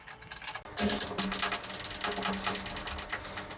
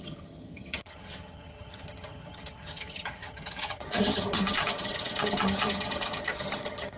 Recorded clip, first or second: first